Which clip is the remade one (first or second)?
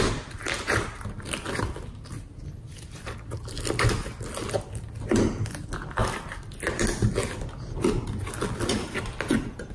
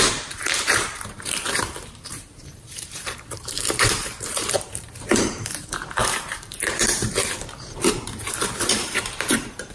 second